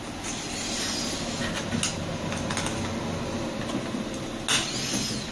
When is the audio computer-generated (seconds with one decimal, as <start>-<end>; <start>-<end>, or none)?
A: none

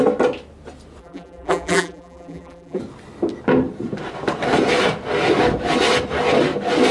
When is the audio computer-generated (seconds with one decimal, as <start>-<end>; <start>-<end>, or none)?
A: 1.0-2.8

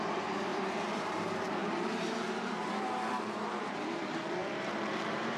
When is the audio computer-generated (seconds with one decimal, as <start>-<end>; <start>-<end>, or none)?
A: 0.0-5.4

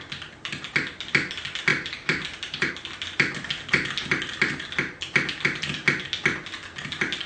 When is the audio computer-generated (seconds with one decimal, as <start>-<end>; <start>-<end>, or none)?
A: 1.7-2.7

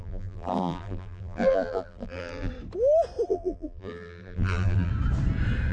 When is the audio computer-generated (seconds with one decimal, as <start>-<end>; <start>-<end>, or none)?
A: 0.0-2.5; 3.3-4.9

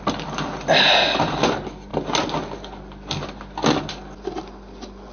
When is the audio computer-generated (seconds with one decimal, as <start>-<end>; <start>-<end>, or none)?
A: none

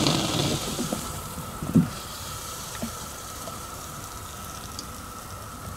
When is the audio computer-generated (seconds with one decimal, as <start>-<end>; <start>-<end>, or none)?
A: 0.5-4.0

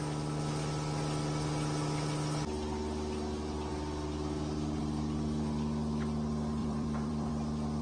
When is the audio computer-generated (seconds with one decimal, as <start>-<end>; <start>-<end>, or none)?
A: 6.6-7.3